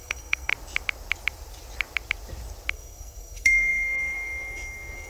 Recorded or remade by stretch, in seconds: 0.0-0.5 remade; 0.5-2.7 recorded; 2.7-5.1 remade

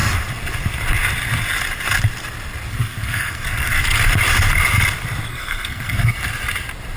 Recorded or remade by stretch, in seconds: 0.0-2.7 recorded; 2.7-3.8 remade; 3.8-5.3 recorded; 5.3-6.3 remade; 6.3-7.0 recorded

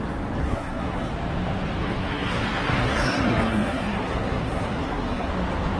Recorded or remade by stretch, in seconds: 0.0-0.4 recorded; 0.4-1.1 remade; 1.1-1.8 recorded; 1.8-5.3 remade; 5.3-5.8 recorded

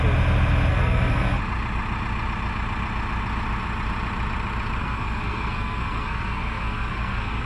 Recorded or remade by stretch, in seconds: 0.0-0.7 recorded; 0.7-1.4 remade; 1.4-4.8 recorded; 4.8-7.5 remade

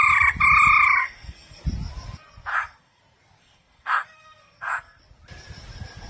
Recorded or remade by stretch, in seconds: 0.0-1.0 recorded; 1.0-1.6 remade; 1.6-2.5 recorded; 2.5-3.0 remade; 3.0-3.4 recorded; 3.4-5.0 remade; 5.0-6.1 recorded

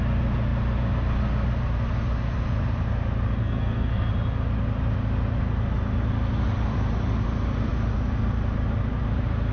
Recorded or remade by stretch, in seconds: 0.0-3.4 recorded; 3.4-4.1 remade; 4.1-9.5 recorded